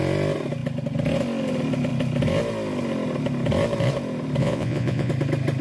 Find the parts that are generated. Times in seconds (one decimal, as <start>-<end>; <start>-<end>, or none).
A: 4.4-5.1